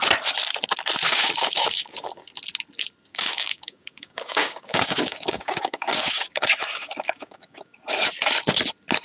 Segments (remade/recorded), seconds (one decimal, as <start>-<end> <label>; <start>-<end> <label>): 0.0-1.2 recorded; 1.2-2.2 remade; 2.2-3.1 recorded; 3.1-7.8 remade; 7.8-9.0 recorded